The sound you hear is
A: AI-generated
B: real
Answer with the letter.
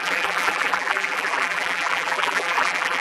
A